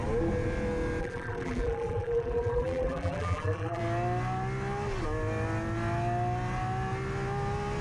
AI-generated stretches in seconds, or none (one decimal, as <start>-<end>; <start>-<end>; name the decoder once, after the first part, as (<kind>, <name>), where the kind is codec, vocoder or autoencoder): 1.0-3.8 (vocoder, BigVGAN v2)